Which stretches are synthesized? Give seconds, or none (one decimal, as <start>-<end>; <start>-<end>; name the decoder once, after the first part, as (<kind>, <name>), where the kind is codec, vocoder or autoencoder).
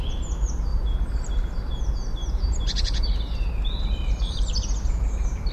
0.7-1.7 (vocoder, BigVGAN v2); 2.1-5.5